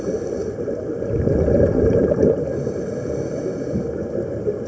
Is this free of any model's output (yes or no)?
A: yes